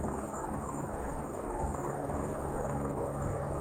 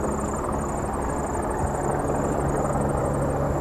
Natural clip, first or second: second